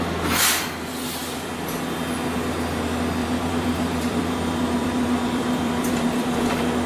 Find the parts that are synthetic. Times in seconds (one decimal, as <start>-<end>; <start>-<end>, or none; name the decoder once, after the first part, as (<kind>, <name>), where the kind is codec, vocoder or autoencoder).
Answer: 3.2-6.5 (vocoder, BigVGAN v2)